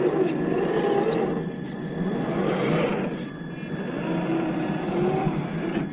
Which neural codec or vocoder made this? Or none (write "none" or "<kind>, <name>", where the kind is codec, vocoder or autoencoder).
none